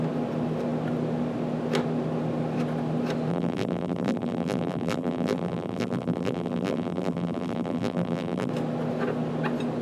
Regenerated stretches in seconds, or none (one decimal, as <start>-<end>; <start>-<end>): 3.3-8.5